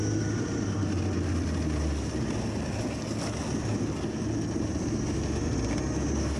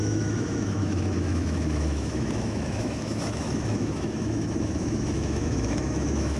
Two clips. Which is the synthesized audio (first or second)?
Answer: second